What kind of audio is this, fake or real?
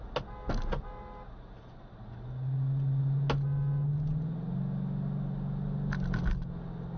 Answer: real